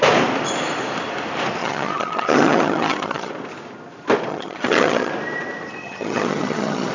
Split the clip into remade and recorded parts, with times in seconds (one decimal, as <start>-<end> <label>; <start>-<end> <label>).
0.0-1.6 recorded; 1.6-3.3 remade; 3.3-4.3 recorded; 4.3-5.1 remade; 5.1-5.8 recorded; 5.8-6.9 remade